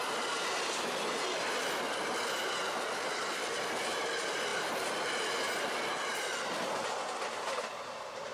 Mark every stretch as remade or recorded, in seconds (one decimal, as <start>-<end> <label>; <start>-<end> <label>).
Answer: 0.0-8.3 recorded